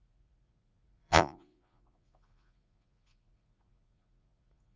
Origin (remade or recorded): remade